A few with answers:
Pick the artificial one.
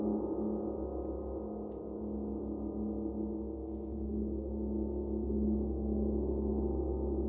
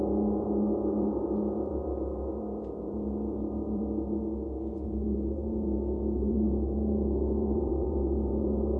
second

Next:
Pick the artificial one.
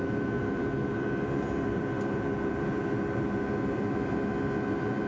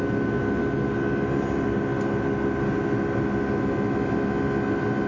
first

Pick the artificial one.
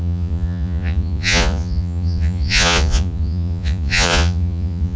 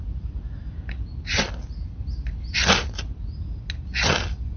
first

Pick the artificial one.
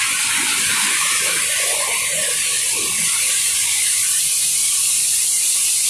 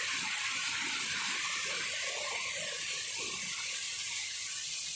first